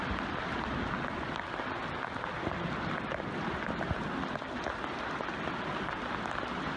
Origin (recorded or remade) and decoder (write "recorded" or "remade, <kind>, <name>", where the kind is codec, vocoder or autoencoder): recorded